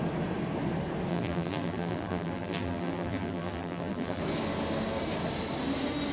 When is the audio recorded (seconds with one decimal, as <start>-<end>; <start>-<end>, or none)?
0.0-1.1; 4.2-6.1